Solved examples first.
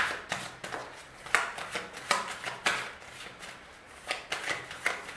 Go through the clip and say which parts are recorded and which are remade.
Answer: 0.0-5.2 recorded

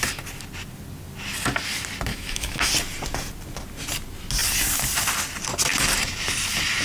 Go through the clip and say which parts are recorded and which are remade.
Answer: 0.0-2.1 recorded; 2.1-2.7 remade; 2.7-6.8 recorded

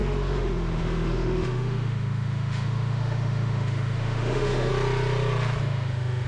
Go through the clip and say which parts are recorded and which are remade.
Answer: 0.0-4.7 remade; 4.7-5.6 recorded; 5.6-6.3 remade

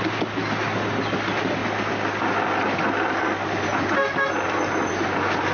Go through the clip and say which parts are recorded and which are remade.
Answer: 0.0-5.5 recorded

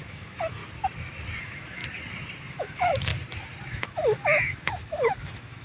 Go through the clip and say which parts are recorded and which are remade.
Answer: 0.0-0.6 remade; 0.6-1.4 recorded; 1.4-1.8 remade; 1.8-2.5 recorded; 2.5-3.1 remade; 3.1-3.7 recorded; 3.7-5.6 remade

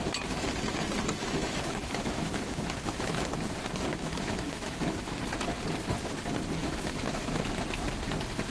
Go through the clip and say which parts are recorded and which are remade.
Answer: 0.0-1.2 recorded; 1.2-3.3 remade; 3.3-3.9 recorded; 3.9-5.2 remade; 5.2-6.6 recorded; 6.6-7.6 remade; 7.6-8.5 recorded